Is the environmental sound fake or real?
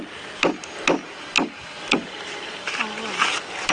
real